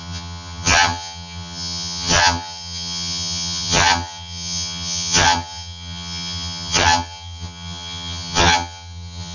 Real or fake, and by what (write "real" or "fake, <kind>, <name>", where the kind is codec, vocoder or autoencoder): fake, vocoder, HiFi-GAN